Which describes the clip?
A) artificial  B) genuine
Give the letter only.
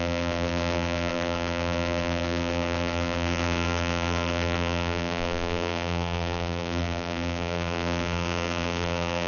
A